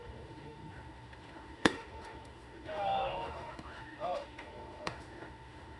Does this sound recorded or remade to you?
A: remade